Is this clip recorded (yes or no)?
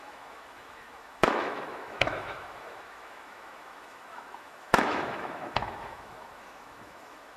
no